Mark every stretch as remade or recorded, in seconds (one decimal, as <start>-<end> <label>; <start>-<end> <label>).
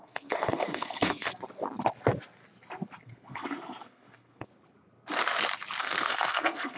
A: 0.0-1.3 remade; 1.3-3.0 recorded; 3.0-4.5 remade; 4.5-5.8 recorded; 5.8-6.8 remade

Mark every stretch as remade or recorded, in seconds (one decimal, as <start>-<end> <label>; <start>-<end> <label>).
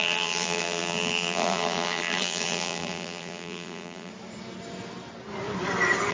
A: 0.0-4.1 remade; 4.1-6.1 recorded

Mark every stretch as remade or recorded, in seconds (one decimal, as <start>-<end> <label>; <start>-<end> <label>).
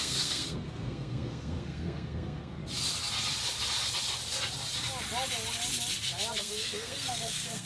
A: 0.0-2.6 remade; 2.6-6.4 recorded; 6.4-7.7 remade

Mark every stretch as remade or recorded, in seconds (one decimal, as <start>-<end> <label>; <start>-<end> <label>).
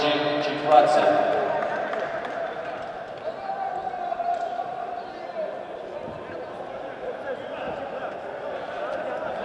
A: 0.0-3.8 recorded; 3.8-4.8 remade; 4.8-7.4 recorded; 7.4-8.1 remade; 8.1-9.4 recorded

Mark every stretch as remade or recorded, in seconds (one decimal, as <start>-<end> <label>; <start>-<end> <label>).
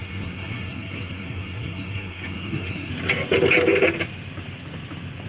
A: 0.0-2.9 remade; 2.9-5.3 recorded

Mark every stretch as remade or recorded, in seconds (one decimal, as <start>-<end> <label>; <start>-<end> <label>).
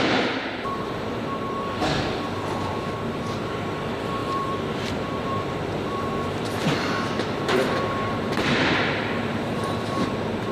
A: 0.0-1.8 remade; 1.8-2.7 recorded; 2.7-10.5 remade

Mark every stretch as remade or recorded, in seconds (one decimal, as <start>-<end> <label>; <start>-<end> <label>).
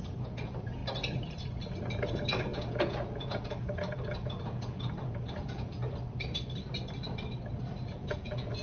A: 0.0-0.8 remade; 0.8-2.1 recorded; 2.1-5.8 remade; 5.8-7.9 recorded; 7.9-8.6 remade